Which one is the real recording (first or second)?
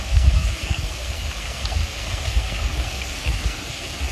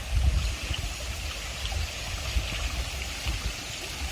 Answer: second